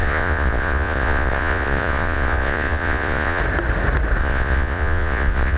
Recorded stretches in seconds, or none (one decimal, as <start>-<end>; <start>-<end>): 3.4-4.2

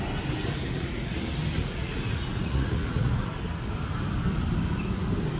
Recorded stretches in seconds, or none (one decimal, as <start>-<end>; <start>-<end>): 0.0-0.4; 1.2-1.6; 3.3-5.4

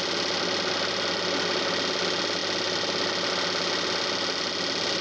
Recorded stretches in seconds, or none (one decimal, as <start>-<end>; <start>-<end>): 0.0-5.0